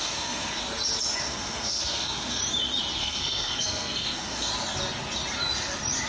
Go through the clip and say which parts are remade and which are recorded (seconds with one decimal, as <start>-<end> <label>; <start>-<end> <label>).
0.0-0.6 remade; 0.6-1.2 recorded; 1.2-2.4 remade; 2.4-3.0 recorded; 3.0-4.5 remade; 4.5-6.1 recorded